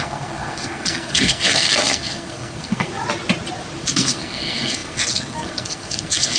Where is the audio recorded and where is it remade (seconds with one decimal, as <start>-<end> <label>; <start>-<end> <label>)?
0.0-2.9 remade; 2.9-3.8 recorded; 3.8-6.4 remade